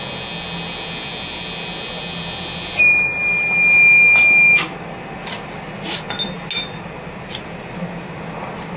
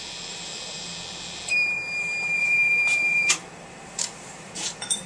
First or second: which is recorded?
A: first